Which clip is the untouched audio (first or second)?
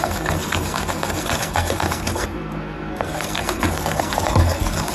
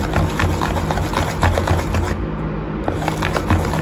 second